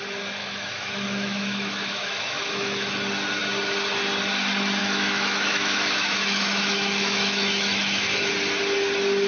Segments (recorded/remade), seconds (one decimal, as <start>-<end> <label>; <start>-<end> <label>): 0.0-0.4 recorded; 0.4-2.9 remade; 2.9-4.8 recorded; 4.8-8.3 remade; 8.3-9.3 recorded